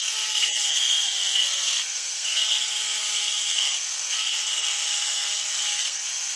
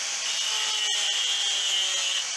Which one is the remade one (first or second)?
first